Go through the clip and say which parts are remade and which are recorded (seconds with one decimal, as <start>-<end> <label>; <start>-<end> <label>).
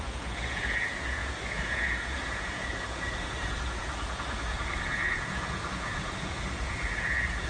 0.0-7.5 remade